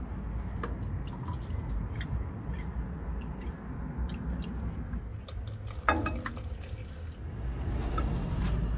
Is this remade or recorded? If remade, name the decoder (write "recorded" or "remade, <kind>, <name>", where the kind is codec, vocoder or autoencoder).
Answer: recorded